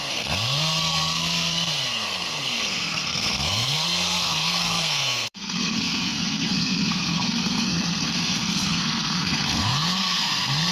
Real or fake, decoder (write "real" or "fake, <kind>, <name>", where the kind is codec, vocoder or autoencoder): fake, codec, SNAC